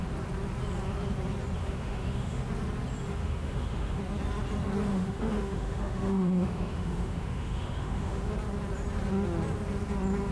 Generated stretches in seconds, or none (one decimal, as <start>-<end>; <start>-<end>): 1.6-2.4; 3.2-4.0; 4.9-8.3